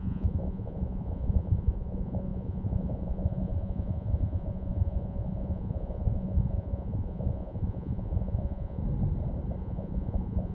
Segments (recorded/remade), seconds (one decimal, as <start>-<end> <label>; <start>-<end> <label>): 0.0-8.8 remade; 8.8-9.6 recorded; 9.6-10.5 remade